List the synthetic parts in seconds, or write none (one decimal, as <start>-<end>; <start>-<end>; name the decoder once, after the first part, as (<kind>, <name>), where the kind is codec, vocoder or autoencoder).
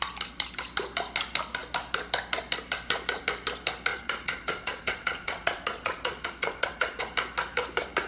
3.9-7.0 (vocoder, Vocos)